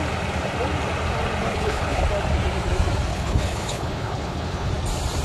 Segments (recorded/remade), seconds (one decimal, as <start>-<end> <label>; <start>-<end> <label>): 0.0-1.5 recorded; 1.5-2.0 remade; 2.0-3.1 recorded; 3.1-4.7 remade; 4.7-5.2 recorded